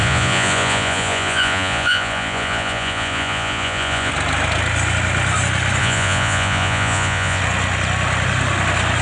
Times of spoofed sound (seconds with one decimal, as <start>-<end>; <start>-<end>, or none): 0.0-4.1; 5.8-7.4